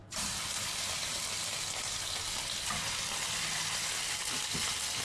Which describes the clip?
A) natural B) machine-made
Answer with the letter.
A